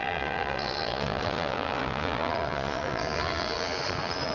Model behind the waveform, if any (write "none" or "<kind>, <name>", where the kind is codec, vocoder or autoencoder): vocoder, Vocos